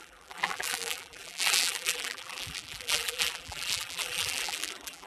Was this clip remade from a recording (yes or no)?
yes